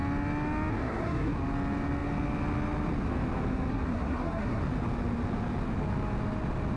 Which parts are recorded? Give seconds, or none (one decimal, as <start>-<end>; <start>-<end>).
0.0-0.7; 1.3-3.7; 4.6-6.8

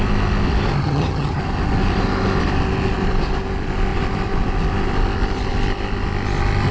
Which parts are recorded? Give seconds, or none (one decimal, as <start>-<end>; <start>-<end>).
0.0-0.8; 1.4-6.7

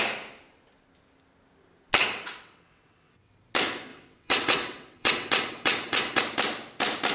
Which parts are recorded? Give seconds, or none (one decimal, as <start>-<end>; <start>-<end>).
0.0-2.0; 3.3-3.9; 6.2-7.1

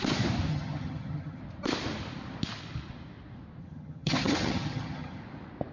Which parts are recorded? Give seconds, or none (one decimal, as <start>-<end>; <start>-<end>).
0.0-0.5; 1.4-3.6; 5.2-5.7